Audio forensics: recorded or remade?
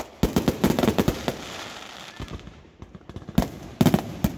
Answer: recorded